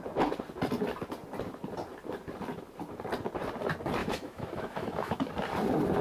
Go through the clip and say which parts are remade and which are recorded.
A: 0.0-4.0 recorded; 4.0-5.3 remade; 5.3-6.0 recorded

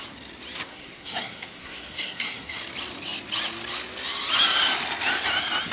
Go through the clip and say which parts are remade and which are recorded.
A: 0.0-0.7 recorded; 0.7-2.6 remade; 2.6-5.7 recorded

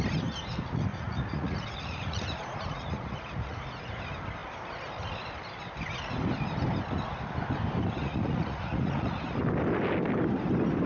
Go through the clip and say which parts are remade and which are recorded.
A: 0.0-0.9 recorded; 0.9-4.0 remade; 4.0-8.0 recorded; 8.0-9.2 remade; 9.2-10.9 recorded

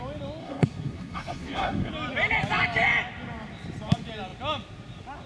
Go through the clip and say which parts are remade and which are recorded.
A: 0.0-0.4 recorded; 0.4-1.9 remade; 1.9-5.3 recorded

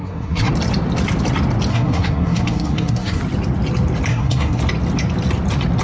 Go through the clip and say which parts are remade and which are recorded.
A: 0.0-0.5 remade; 0.5-1.7 recorded; 1.7-3.2 remade; 3.2-4.1 recorded; 4.1-4.6 remade; 4.6-5.8 recorded

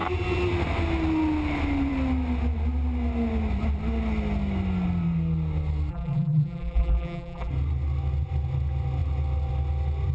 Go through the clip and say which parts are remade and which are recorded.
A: 0.0-5.9 recorded; 5.9-7.5 remade; 7.5-10.1 recorded

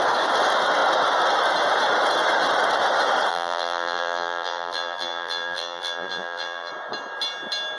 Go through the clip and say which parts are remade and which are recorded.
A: 0.0-3.3 recorded; 3.3-6.7 remade; 6.7-7.8 recorded